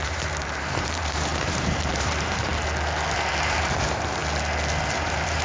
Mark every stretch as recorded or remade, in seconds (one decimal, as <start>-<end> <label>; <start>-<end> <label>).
0.0-2.5 remade; 2.5-3.3 recorded; 3.3-4.2 remade; 4.2-5.0 recorded; 5.0-5.4 remade